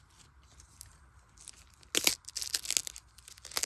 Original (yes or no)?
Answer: yes